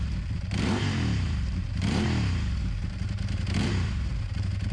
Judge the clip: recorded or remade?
remade